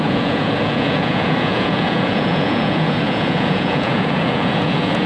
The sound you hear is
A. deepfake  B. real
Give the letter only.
A